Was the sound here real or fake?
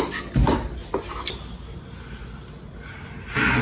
real